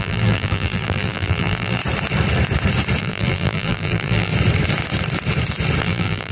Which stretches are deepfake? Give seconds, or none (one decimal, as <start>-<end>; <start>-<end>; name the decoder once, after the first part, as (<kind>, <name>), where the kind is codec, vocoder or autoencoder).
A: 0.0-1.8 (vocoder, BigVGAN v2); 3.0-4.3; 5.8-6.3